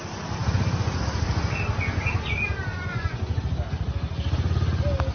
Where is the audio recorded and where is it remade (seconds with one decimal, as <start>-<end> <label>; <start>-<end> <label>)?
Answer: 0.0-2.7 recorded; 2.7-3.4 remade; 3.4-5.1 recorded